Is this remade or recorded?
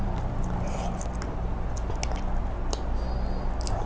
recorded